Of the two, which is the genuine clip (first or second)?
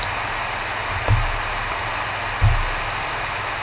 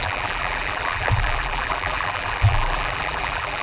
first